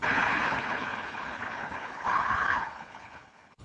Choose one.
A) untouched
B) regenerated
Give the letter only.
B